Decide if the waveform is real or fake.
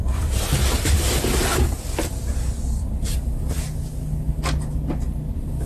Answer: real